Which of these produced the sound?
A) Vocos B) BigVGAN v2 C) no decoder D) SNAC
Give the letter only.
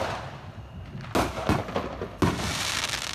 C